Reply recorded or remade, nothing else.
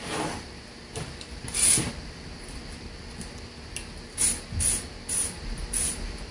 recorded